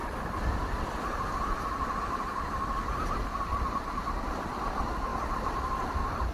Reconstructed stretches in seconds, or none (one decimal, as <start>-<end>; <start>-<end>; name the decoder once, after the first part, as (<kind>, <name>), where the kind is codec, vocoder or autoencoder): 0.0-3.8 (vocoder, BigVGAN v2); 5.1-6.3